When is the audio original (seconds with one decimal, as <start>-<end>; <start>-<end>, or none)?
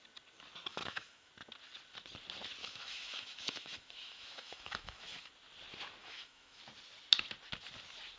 0.0-0.7; 1.3-2.6; 5.3-6.0; 6.6-8.2